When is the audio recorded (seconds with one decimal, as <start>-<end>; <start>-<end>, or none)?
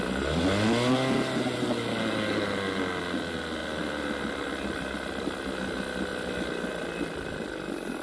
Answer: 0.0-8.0